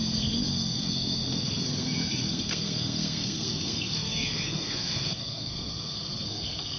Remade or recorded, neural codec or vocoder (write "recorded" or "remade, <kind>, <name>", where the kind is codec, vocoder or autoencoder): remade, codec, SNAC